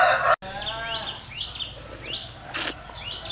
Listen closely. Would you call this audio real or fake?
real